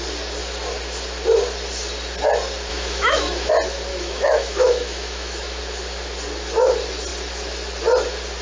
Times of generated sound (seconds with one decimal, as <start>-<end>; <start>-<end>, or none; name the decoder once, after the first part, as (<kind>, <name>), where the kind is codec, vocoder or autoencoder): 2.7-3.5 (autoencoder, DAC-VAE); 3.9-5.6